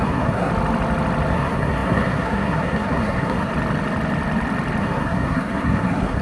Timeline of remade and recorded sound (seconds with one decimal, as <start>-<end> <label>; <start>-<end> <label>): 0.0-0.5 remade; 0.5-1.3 recorded; 1.3-3.5 remade; 3.5-4.8 recorded; 4.8-6.2 remade